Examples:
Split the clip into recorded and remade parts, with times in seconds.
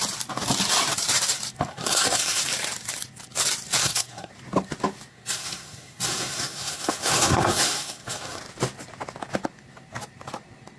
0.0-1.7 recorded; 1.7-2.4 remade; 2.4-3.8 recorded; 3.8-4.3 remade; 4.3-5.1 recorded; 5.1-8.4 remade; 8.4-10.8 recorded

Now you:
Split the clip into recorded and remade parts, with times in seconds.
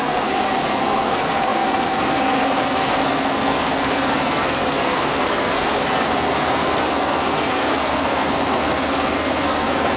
0.0-10.0 remade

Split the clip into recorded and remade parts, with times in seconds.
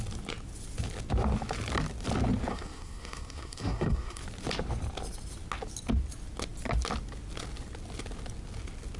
0.0-2.5 recorded; 2.5-4.2 remade; 4.2-9.0 recorded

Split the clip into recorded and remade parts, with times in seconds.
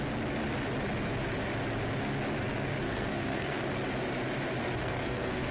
0.0-2.5 recorded; 2.5-3.7 remade; 3.7-4.6 recorded; 4.6-5.5 remade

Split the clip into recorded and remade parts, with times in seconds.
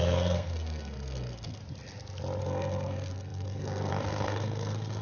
0.0-1.6 remade; 1.6-2.4 recorded; 2.4-5.0 remade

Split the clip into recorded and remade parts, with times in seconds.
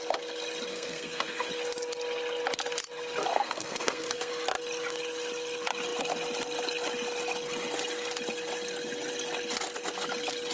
0.0-0.7 recorded; 0.7-1.5 remade; 1.5-3.3 recorded; 3.3-4.3 remade; 4.3-10.5 recorded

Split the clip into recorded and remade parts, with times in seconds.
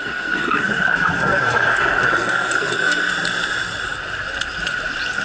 0.0-3.1 remade; 3.1-5.2 recorded